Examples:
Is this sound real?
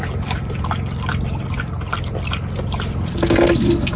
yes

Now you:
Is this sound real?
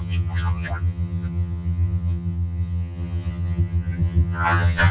no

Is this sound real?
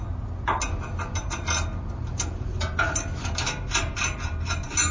yes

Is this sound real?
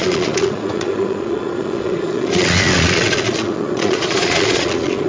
no